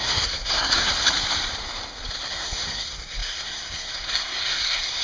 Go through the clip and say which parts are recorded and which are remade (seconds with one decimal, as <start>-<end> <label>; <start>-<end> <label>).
0.0-0.9 remade; 0.9-2.3 recorded; 2.3-5.0 remade